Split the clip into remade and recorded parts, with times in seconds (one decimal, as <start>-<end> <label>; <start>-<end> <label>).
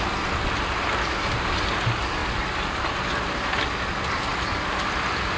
0.0-5.4 recorded